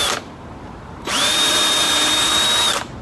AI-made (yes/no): yes